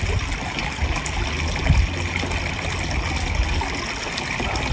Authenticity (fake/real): real